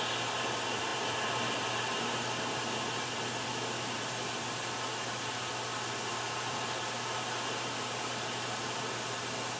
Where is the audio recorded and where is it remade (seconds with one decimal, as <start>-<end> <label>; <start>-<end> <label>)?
0.0-9.6 recorded